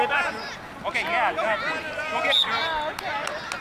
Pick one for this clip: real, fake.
real